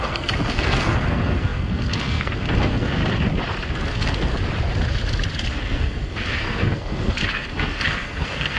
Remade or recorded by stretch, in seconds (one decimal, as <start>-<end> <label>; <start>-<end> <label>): 0.0-3.0 remade; 3.0-3.7 recorded; 3.7-4.3 remade; 4.3-5.5 recorded; 5.5-8.6 remade